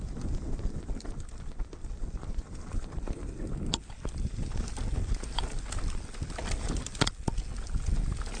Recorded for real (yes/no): yes